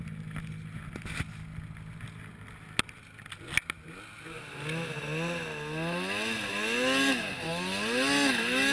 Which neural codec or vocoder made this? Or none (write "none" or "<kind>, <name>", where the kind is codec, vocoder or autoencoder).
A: none